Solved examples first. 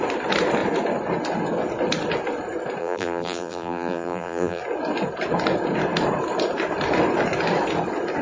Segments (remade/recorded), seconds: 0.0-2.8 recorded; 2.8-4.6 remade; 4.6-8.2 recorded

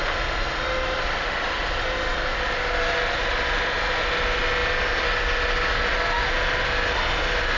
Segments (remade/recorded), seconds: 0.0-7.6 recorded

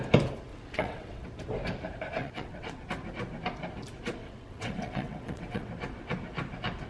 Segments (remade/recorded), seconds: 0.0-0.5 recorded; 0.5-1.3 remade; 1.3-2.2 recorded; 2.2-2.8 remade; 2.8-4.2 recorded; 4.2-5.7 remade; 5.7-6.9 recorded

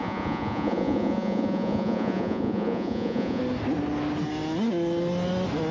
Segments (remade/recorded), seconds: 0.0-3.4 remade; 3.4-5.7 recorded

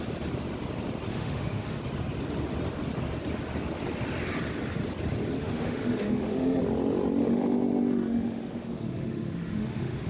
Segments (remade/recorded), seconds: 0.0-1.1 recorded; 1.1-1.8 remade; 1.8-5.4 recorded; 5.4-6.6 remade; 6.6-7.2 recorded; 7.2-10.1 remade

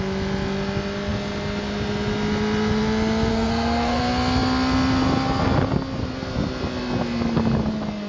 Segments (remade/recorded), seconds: 0.0-3.3 recorded; 3.3-4.0 remade; 4.0-8.1 recorded

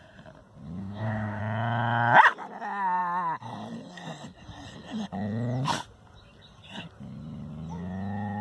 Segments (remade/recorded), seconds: 0.0-0.8 recorded; 0.8-1.4 remade; 1.4-8.4 recorded